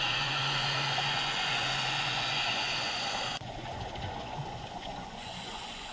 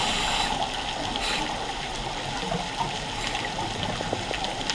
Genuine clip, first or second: second